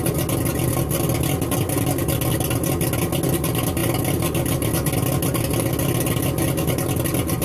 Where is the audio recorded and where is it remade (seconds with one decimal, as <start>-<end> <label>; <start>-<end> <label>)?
0.0-7.4 recorded